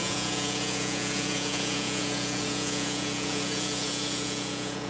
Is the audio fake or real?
fake